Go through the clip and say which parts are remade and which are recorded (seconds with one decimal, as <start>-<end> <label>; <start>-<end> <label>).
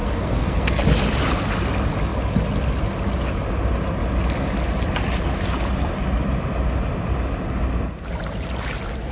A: 0.0-0.8 remade; 0.8-9.1 recorded